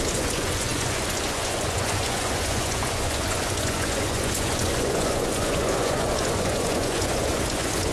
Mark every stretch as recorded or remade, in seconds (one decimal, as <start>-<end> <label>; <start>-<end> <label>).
0.0-7.9 remade